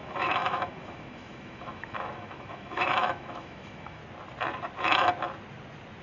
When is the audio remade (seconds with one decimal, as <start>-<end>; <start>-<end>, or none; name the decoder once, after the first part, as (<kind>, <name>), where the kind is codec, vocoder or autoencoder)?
0.0-4.0 (autoencoder, DAC-VAE)